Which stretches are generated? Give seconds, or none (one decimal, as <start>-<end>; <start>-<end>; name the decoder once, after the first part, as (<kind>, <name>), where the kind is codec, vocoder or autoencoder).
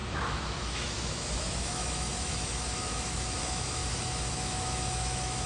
0.0-3.8 (autoencoder, DAC-VAE); 4.3-5.5